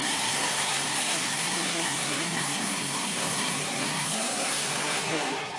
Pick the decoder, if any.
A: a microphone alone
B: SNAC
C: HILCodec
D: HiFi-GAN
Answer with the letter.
B